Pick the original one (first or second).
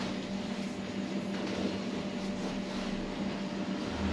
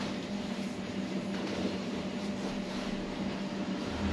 first